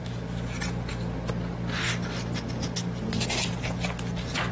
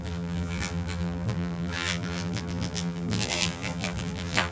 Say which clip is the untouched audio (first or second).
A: first